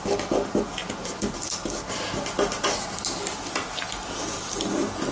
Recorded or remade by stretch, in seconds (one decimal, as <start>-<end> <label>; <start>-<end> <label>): 0.0-5.1 recorded